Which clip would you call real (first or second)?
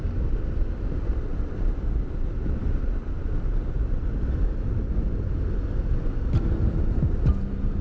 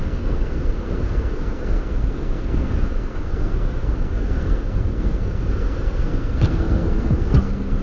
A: first